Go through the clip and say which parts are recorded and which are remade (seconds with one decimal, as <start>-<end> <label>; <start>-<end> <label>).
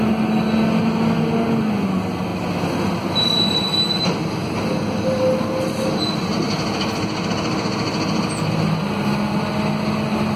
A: 0.0-10.4 recorded